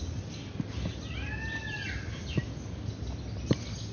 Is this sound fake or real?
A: real